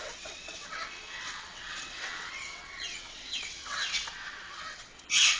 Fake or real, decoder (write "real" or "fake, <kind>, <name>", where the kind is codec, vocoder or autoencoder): fake, vocoder, WaveNeXt